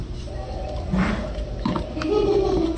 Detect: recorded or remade recorded